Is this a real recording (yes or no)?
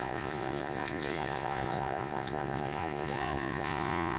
no